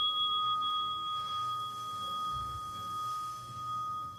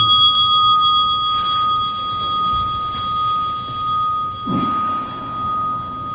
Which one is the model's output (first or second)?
first